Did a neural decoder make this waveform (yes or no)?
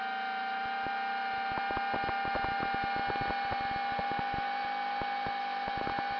no